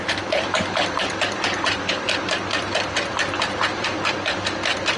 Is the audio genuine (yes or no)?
no